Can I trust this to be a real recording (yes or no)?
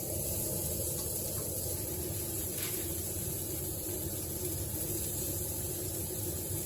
no